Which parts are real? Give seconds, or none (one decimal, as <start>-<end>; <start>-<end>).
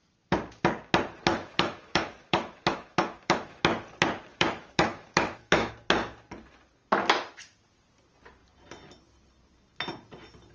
0.0-1.3; 3.6-4.3; 5.7-10.5